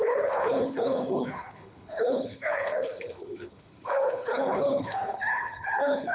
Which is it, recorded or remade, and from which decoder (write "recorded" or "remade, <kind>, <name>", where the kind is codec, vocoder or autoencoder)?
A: remade, codec, HILCodec